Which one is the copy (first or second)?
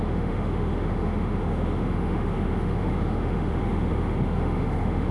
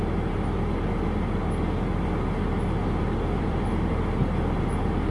first